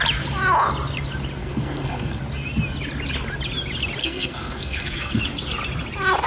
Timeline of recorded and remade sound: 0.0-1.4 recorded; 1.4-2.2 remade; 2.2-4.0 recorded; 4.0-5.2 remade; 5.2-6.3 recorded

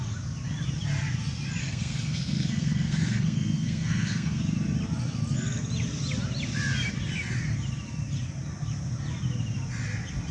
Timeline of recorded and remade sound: 0.0-1.6 recorded; 1.6-4.4 remade; 4.4-10.3 recorded

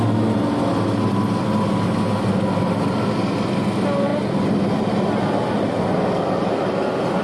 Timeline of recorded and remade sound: 0.0-7.2 recorded

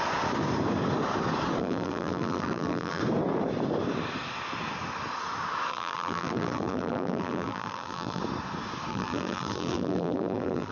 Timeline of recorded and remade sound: 0.0-1.6 recorded; 1.6-3.0 remade; 3.0-5.7 recorded; 5.7-8.2 remade; 8.2-8.9 recorded; 8.9-10.7 remade

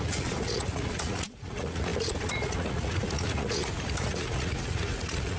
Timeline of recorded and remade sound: 0.0-5.4 remade

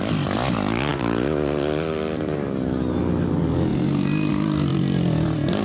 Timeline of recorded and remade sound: 0.0-0.9 remade; 0.9-3.0 recorded; 3.0-3.7 remade; 3.7-4.3 recorded; 4.3-5.6 remade

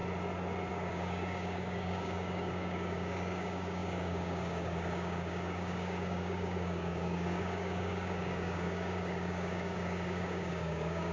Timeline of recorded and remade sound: 0.0-0.7 recorded; 0.7-11.1 remade

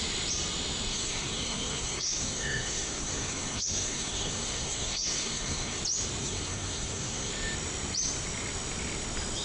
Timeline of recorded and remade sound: 0.0-0.9 recorded; 0.9-5.8 remade; 5.8-6.2 recorded; 6.2-7.3 remade; 7.3-9.4 recorded